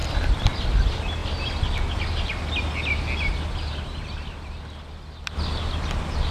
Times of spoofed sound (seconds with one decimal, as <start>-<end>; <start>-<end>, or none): none